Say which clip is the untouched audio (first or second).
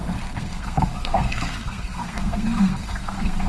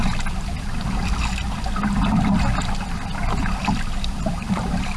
second